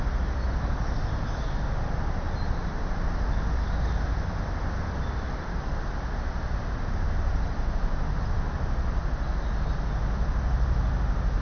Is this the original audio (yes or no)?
yes